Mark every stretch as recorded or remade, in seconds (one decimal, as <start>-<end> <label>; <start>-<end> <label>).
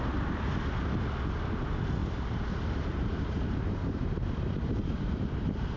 0.0-2.0 recorded; 2.0-5.8 remade